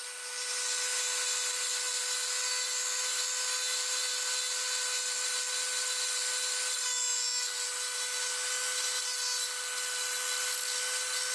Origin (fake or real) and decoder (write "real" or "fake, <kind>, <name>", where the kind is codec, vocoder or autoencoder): real